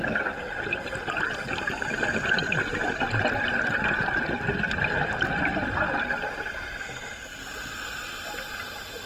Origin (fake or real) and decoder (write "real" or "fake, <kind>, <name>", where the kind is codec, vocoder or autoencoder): real